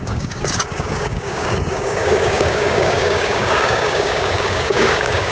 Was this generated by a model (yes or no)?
yes